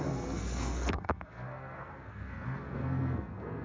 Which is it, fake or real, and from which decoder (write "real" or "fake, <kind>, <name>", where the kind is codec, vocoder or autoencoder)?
fake, codec, SNAC